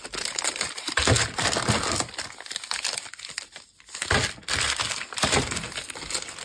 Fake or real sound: real